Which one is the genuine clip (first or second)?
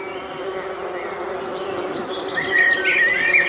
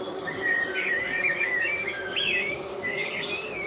first